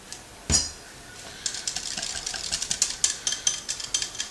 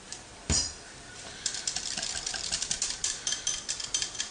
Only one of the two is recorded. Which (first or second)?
first